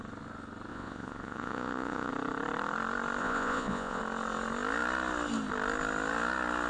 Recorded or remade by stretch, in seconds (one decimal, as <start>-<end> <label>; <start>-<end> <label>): 0.0-0.7 recorded; 0.7-2.1 remade; 2.1-3.2 recorded; 3.2-4.0 remade; 4.0-6.7 recorded